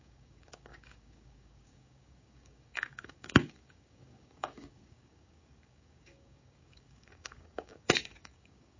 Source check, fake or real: fake